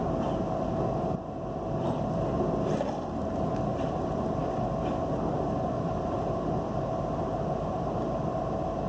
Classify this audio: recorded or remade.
recorded